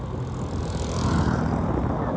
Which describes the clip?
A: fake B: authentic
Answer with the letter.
B